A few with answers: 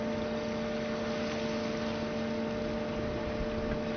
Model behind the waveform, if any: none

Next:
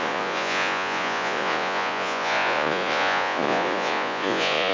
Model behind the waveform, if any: vocoder, Vocos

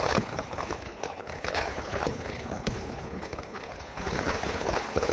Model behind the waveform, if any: codec, HILCodec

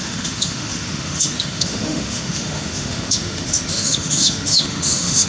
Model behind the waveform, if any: autoencoder, DAC-VAE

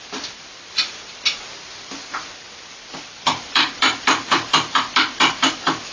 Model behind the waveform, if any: vocoder, BigVGAN v2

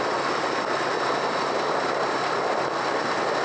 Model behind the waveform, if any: vocoder, BigVGAN v2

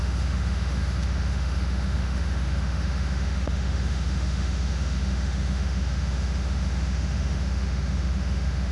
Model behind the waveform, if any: autoencoder, DAC-VAE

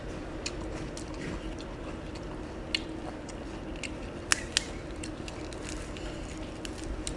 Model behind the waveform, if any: none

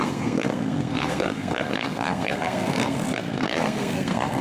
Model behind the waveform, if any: codec, SNAC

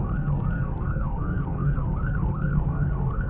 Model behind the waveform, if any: codec, SNAC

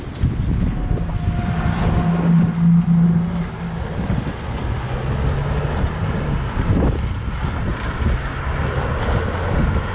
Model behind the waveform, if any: none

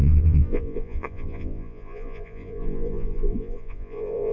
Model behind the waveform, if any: vocoder, Vocos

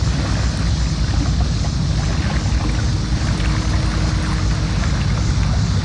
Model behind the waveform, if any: none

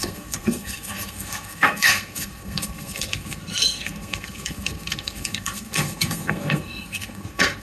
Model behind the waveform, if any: codec, SNAC